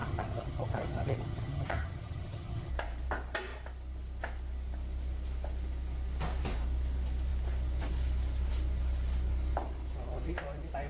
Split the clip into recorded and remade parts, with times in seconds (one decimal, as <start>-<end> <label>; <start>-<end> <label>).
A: 0.0-2.7 remade; 2.7-10.9 recorded

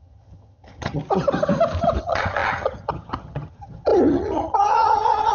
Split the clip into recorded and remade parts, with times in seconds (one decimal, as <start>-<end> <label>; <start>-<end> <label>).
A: 0.0-1.0 remade; 1.0-2.0 recorded; 2.0-5.3 remade

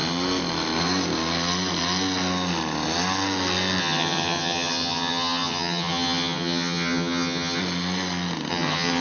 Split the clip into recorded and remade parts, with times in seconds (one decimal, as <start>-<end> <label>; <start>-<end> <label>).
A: 0.0-3.8 recorded; 3.8-7.6 remade; 7.6-8.5 recorded; 8.5-9.0 remade

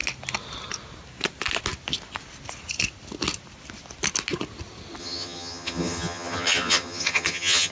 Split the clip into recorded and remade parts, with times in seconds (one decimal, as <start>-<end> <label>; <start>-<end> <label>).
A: 0.0-5.0 recorded; 5.0-7.7 remade

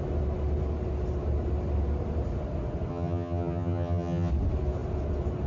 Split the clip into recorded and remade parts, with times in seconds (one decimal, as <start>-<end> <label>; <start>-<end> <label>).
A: 0.0-2.9 recorded; 2.9-4.3 remade; 4.3-5.5 recorded